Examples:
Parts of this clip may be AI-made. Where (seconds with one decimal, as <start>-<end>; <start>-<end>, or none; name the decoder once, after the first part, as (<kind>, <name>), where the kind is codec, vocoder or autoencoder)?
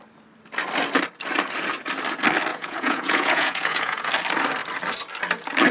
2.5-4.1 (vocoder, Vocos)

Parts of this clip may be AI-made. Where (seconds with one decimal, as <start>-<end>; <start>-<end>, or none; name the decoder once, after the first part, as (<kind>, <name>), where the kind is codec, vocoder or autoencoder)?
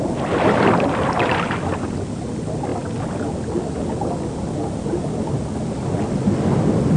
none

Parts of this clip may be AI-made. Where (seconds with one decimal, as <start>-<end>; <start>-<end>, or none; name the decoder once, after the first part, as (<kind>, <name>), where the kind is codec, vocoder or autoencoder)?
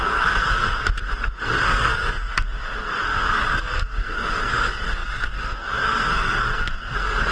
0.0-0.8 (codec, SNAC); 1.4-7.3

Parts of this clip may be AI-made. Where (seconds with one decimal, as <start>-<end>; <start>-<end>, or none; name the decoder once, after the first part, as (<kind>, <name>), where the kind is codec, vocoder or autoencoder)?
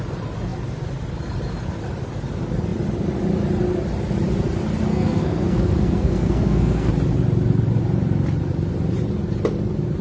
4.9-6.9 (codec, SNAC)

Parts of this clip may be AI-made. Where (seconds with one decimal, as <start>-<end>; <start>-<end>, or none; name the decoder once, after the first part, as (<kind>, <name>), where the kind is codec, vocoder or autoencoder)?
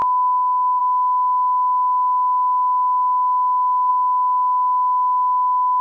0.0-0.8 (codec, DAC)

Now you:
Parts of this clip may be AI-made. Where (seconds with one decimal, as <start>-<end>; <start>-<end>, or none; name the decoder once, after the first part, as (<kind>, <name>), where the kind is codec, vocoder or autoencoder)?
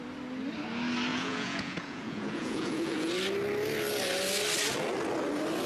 1.1-3.1 (vocoder, Vocos)